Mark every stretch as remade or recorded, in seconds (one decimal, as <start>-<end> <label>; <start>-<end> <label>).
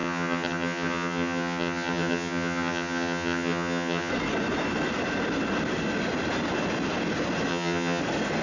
0.0-4.1 remade; 4.1-7.5 recorded; 7.5-8.0 remade; 8.0-8.4 recorded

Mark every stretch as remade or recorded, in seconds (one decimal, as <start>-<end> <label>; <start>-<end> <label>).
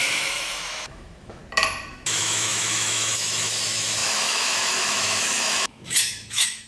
0.0-1.4 remade; 1.4-1.9 recorded; 1.9-6.7 remade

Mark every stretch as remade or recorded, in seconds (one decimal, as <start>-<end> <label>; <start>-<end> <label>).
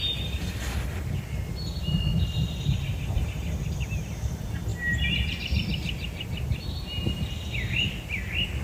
0.0-8.6 recorded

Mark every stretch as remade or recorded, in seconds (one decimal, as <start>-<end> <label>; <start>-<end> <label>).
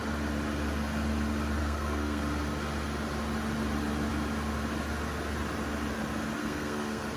0.0-1.6 recorded; 1.6-2.2 remade; 2.2-6.4 recorded; 6.4-7.2 remade